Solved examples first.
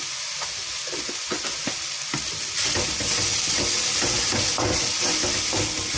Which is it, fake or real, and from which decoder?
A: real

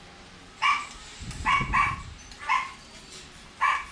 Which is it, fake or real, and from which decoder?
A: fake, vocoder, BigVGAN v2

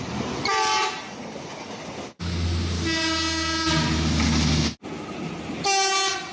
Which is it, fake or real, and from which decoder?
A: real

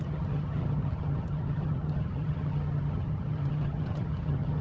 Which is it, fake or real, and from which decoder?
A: fake, vocoder, HiFi-GAN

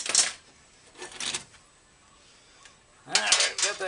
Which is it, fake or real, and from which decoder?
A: real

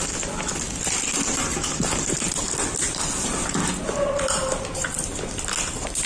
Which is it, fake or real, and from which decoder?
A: real